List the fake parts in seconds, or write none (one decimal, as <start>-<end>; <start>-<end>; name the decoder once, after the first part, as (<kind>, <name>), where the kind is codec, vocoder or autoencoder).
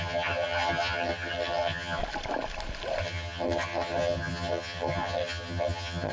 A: 0.0-2.0 (vocoder, HiFi-GAN); 3.0-6.1